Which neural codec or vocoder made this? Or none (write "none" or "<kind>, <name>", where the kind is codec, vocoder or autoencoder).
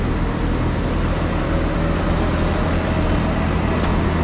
none